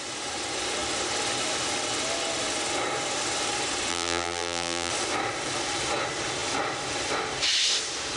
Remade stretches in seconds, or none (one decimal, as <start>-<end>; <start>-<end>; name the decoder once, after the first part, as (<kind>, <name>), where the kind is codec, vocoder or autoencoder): 3.9-4.9 (vocoder, BigVGAN v2)